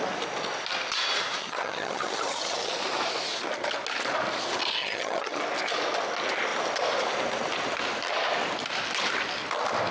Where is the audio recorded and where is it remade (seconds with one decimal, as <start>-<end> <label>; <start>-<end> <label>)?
0.0-1.4 recorded; 1.4-2.7 remade; 2.7-4.8 recorded; 4.8-5.4 remade; 5.4-9.9 recorded